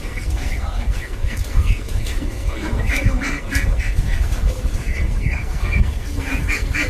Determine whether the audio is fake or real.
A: fake